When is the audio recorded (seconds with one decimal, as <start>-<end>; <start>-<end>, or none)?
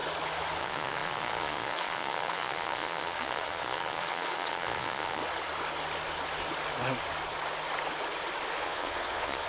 0.0-0.6; 5.2-8.6